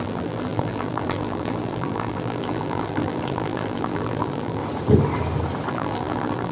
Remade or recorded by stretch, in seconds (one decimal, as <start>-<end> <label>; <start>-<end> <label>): 0.0-4.6 remade; 4.6-5.7 recorded; 5.7-6.5 remade